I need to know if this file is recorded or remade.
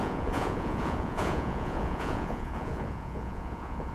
remade